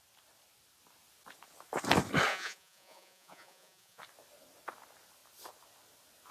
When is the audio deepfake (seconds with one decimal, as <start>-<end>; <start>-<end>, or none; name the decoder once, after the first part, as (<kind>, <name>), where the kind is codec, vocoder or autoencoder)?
2.3-4.0 (vocoder, Vocos)